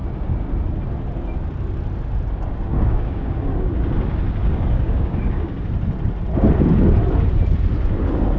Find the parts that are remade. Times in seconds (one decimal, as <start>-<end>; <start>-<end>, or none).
2.7-3.7; 4.4-5.6